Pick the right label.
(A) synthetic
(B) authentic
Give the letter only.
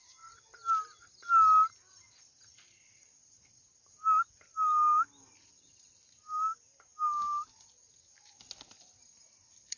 B